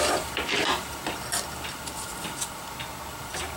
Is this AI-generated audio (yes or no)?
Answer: no